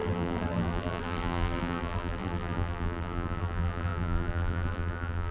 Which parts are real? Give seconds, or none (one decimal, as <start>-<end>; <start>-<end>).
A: none